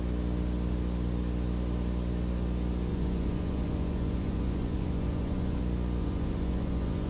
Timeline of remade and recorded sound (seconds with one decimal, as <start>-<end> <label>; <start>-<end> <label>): 0.0-2.9 recorded; 2.9-5.6 remade; 5.6-6.0 recorded; 6.0-7.1 remade